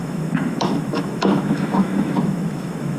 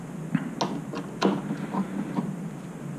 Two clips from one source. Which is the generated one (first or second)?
first